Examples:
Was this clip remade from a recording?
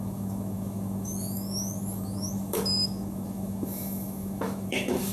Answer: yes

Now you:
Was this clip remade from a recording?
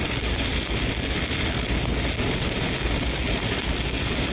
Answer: no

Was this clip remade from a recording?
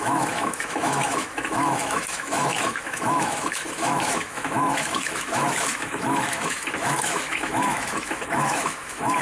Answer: yes